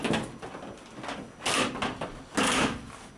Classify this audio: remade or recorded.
recorded